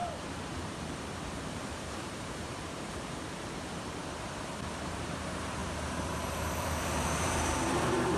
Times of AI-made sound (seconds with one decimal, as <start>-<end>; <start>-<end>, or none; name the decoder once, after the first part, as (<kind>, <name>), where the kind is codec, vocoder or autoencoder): 0.0-8.2 (vocoder, BigVGAN v2)